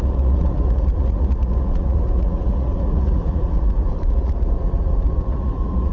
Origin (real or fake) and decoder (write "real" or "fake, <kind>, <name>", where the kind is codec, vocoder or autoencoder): fake, vocoder, Vocos